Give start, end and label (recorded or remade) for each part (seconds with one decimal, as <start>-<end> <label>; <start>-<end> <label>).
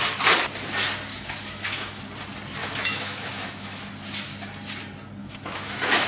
0.0-1.1 recorded; 1.1-2.0 remade; 2.0-2.6 recorded; 2.6-3.9 remade; 3.9-5.2 recorded; 5.2-6.1 remade